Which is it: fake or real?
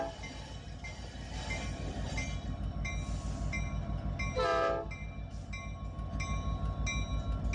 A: real